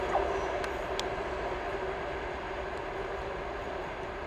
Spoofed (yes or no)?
no